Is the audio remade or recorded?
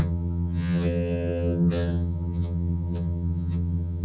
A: remade